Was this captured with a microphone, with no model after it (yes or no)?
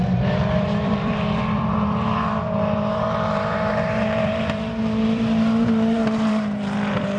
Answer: no